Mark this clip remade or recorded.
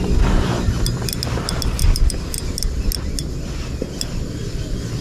recorded